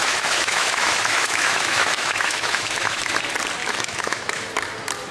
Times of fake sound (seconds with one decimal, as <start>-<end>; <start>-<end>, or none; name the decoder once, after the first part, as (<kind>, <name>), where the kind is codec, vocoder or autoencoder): 0.0-3.1 (autoencoder, DAC-VAE); 3.6-4.5